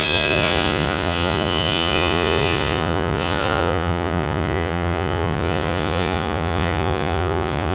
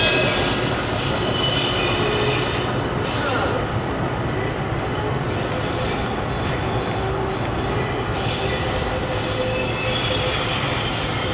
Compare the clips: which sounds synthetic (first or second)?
first